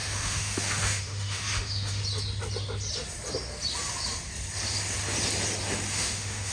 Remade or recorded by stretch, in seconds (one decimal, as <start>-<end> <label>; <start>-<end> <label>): 0.0-2.0 remade; 2.0-5.9 recorded; 5.9-6.5 remade